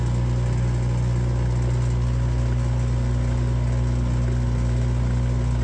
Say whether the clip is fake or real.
real